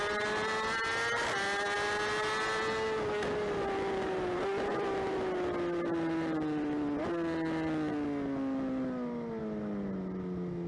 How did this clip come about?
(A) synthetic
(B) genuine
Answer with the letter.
B